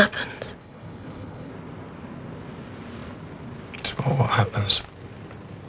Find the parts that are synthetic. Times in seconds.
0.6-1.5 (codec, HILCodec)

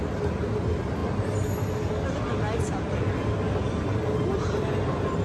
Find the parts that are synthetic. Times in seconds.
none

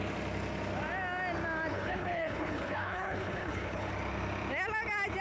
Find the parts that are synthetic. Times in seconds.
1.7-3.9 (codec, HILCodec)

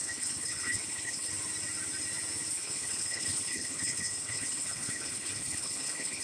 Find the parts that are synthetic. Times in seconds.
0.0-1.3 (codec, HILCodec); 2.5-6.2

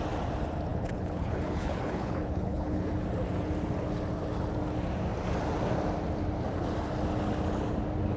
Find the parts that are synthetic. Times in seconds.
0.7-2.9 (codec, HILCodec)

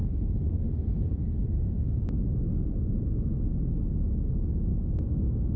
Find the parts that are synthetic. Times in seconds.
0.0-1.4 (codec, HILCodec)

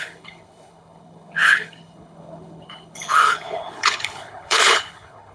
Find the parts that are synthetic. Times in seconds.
0.0-5.3 (codec, HILCodec)

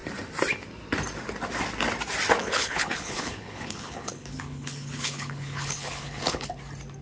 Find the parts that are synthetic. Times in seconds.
2.4-6.6 (codec, HILCodec)